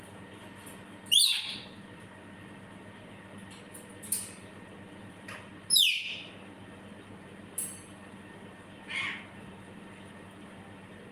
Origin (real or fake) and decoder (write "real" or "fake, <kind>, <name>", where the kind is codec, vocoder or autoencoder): real